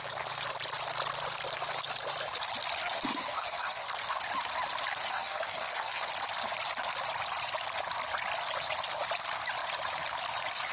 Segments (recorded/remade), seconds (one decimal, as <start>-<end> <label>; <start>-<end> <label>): 0.0-3.1 recorded; 3.1-4.2 remade; 4.2-4.9 recorded; 4.9-6.1 remade; 6.1-10.7 recorded